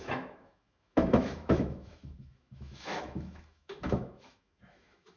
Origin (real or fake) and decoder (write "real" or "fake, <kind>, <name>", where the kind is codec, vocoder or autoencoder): fake, autoencoder, DAC-VAE